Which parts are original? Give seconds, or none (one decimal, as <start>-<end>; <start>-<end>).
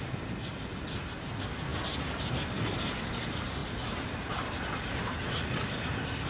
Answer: 0.0-3.6; 5.6-6.3